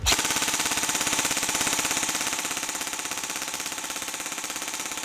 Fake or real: real